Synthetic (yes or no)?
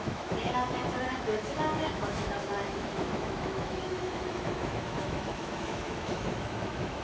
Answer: yes